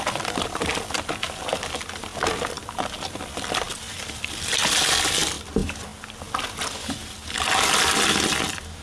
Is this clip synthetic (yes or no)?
no